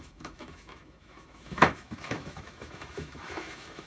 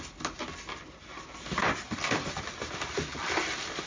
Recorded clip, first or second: second